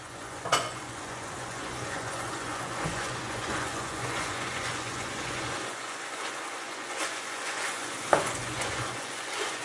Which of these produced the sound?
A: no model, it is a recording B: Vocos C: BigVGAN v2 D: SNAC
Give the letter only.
B